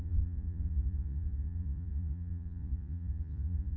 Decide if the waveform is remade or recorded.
remade